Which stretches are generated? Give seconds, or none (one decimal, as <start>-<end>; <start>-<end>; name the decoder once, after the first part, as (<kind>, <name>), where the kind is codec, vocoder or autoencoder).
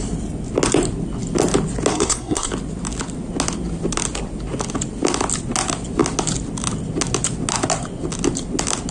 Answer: 1.9-2.5 (codec, SNAC)